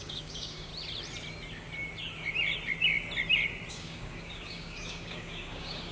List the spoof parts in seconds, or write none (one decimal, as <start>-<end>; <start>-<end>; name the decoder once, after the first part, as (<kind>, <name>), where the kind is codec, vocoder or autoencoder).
0.0-0.7 (codec, DAC); 3.7-5.9